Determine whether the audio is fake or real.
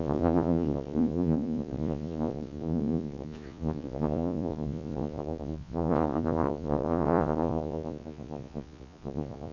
fake